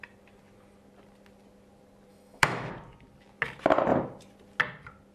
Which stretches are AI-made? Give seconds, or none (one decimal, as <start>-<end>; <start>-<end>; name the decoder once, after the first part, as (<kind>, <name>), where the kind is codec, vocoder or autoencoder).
2.1-2.7 (autoencoder, DAC-VAE)